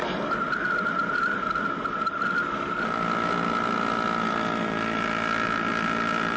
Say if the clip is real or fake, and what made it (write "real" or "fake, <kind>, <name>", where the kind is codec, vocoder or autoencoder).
real